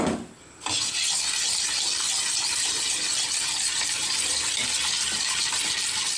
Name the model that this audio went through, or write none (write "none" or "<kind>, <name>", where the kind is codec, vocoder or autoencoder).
none